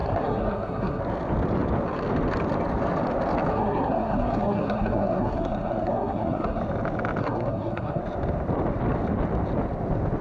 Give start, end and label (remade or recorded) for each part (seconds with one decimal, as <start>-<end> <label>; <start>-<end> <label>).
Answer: 0.0-1.0 remade; 1.0-3.5 recorded; 3.5-6.6 remade; 6.6-7.2 recorded; 7.2-8.0 remade; 8.0-10.2 recorded